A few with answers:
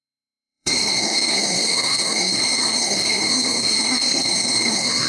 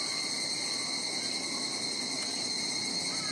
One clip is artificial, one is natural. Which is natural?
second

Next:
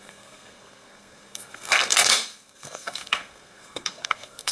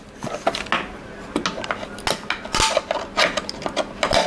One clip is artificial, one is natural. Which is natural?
second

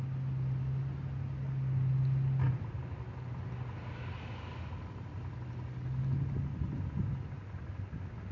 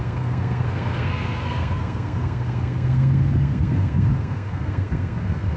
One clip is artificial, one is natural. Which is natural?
first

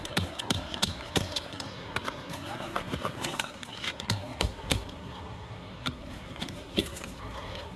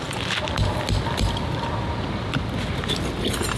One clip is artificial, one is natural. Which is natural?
second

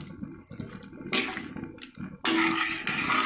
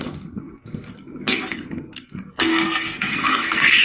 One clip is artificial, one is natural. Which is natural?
first